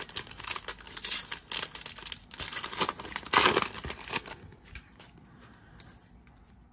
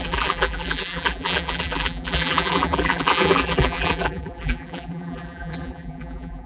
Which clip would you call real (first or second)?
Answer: first